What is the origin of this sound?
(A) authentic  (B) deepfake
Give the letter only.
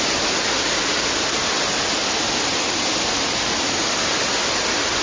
A